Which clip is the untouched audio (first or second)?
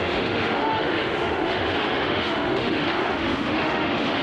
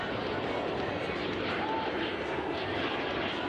second